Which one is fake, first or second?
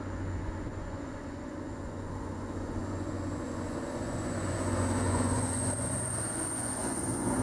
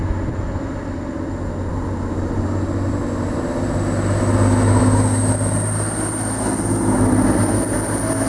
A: first